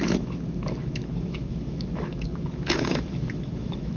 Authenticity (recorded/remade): remade